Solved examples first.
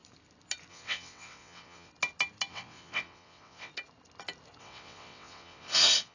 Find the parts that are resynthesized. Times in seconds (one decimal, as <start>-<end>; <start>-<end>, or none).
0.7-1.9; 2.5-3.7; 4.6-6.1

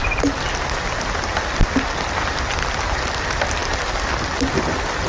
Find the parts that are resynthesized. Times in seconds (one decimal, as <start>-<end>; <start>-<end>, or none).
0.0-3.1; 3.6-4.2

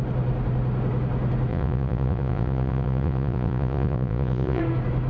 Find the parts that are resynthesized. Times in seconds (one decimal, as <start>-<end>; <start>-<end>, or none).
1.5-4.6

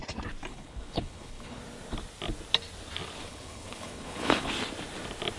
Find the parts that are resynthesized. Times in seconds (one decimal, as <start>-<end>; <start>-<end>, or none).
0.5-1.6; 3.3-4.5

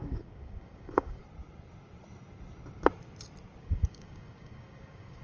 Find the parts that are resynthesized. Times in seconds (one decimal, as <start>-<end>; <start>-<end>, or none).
0.0-1.2; 3.6-5.2

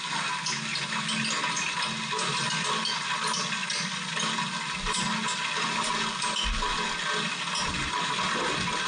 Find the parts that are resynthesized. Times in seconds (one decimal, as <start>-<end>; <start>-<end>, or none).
none